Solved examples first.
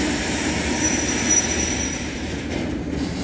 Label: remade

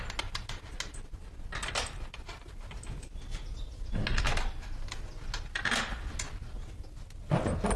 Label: recorded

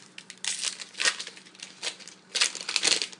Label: recorded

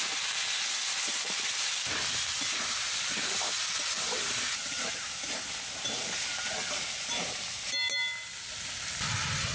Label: recorded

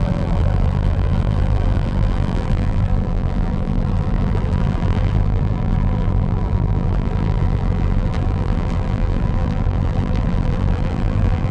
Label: remade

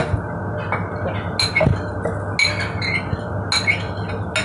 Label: recorded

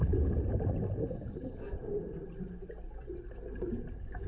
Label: remade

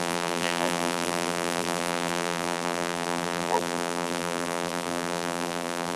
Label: remade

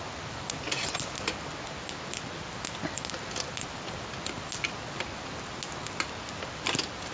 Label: recorded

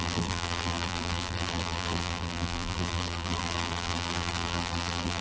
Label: remade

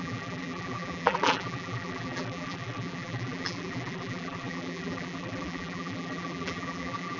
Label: remade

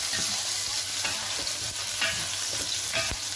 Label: recorded